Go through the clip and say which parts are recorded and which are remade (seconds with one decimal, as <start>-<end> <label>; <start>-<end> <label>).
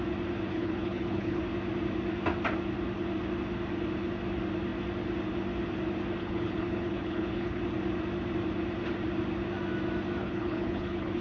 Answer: 0.0-0.5 recorded; 0.5-1.4 remade; 1.4-6.2 recorded; 6.2-7.6 remade; 7.6-10.2 recorded; 10.2-11.2 remade